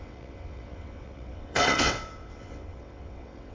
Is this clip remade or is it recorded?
remade